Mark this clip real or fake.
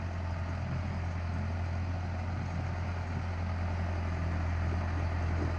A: real